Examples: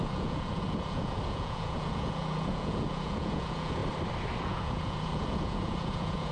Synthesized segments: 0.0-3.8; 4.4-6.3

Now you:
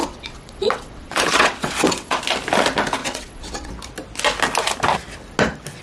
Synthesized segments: 0.0-2.2; 3.0-3.7

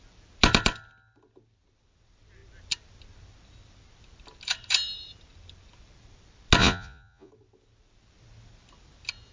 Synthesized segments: 6.6-7.3

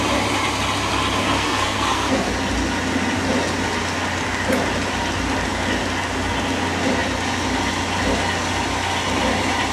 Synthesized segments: 1.2-2.3

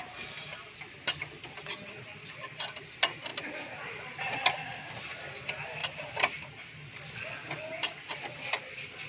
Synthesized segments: none

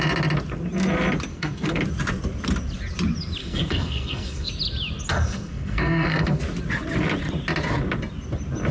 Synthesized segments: 1.3-1.8; 3.4-4.5; 5.1-6.4